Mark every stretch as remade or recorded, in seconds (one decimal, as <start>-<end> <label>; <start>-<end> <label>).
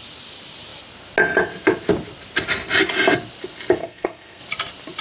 0.0-3.8 recorded; 3.8-4.4 remade; 4.4-5.0 recorded